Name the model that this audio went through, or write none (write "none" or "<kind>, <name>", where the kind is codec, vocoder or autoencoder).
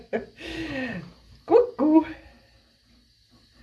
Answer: none